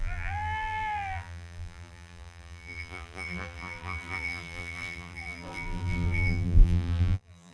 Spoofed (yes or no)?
yes